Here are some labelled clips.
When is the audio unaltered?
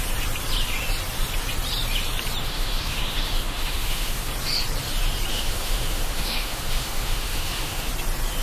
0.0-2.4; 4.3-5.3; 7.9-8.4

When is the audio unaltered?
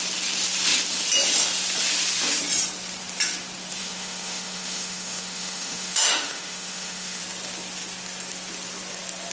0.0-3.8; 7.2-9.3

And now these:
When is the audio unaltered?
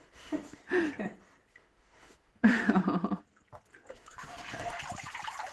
0.6-1.5; 2.8-3.9; 4.8-5.5